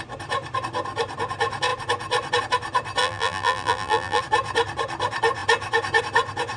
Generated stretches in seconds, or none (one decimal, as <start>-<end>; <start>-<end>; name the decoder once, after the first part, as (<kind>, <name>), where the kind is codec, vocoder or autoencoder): 3.0-4.2 (vocoder, BigVGAN v2)